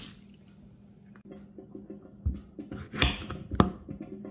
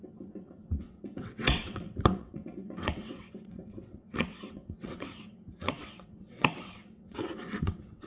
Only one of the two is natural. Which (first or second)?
first